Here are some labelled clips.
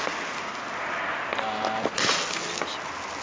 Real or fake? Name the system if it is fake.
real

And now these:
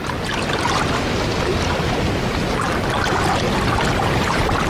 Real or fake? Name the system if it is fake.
real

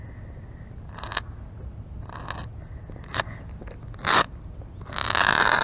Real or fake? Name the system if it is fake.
real